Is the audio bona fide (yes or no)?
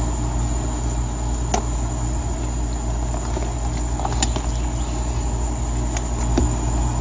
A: yes